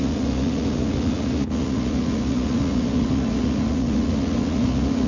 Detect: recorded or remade remade